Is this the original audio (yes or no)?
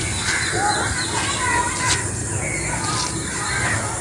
yes